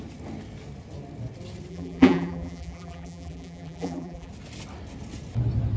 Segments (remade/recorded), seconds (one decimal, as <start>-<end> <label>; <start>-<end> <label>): 0.0-1.7 recorded; 1.7-4.3 remade; 4.3-5.8 recorded